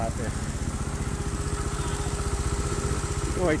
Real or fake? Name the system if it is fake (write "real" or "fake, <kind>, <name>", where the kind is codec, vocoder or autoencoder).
real